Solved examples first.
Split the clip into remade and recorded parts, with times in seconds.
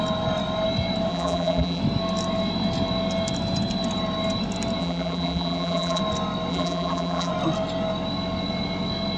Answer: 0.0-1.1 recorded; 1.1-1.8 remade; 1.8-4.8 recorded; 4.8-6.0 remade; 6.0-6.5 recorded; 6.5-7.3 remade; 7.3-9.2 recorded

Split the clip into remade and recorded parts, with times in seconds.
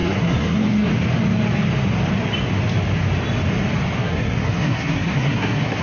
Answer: 0.0-0.9 remade; 0.9-4.0 recorded; 4.0-5.8 remade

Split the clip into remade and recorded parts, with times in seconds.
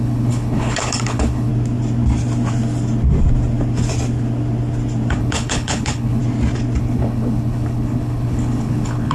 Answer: 0.0-1.5 remade; 1.5-5.2 recorded; 5.2-6.2 remade; 6.2-6.8 recorded; 6.8-9.1 remade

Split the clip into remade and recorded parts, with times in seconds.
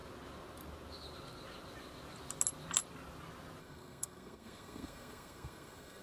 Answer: 0.0-3.6 recorded; 3.6-6.0 remade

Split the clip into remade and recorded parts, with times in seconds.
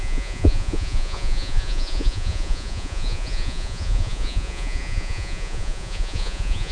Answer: 0.0-6.7 remade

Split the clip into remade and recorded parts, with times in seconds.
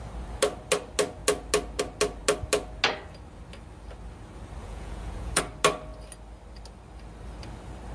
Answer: 0.0-4.6 recorded; 4.6-5.4 remade; 5.4-7.9 recorded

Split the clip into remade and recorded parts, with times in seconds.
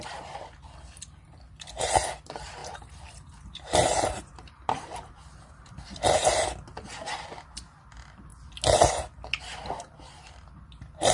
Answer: 0.0-2.6 recorded; 2.6-5.7 remade; 5.7-11.1 recorded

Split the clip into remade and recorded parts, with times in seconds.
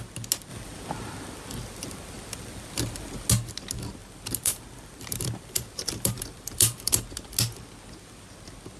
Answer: 0.0-0.5 recorded; 0.5-3.3 remade; 3.3-4.0 recorded; 4.0-6.9 remade; 6.9-8.8 recorded